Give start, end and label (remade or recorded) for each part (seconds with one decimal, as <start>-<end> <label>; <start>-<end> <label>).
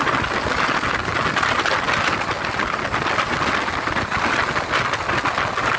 0.0-5.8 recorded